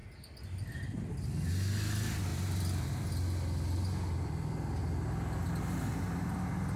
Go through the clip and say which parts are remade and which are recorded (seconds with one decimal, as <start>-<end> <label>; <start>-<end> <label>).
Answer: 0.0-2.3 recorded; 2.3-3.1 remade; 3.1-6.8 recorded